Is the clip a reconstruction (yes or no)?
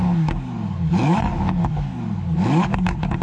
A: yes